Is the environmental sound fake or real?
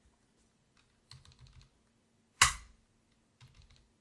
real